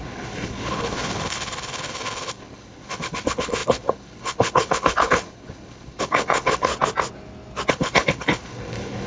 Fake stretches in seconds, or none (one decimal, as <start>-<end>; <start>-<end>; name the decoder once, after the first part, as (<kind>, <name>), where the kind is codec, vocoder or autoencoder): 0.0-6.7 (codec, HILCodec); 7.7-9.1